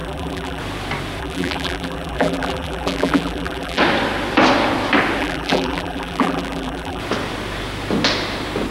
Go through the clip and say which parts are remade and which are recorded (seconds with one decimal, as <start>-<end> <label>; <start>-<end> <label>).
0.0-0.6 remade; 0.6-1.2 recorded; 1.2-3.8 remade; 3.8-5.2 recorded; 5.2-7.0 remade; 7.0-8.7 recorded